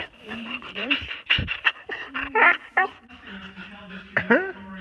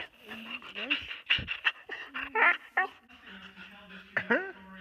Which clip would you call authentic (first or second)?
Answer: second